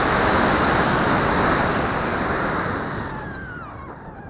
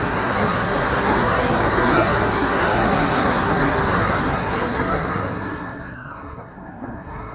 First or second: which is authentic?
first